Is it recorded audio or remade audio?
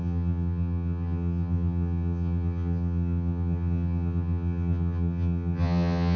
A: remade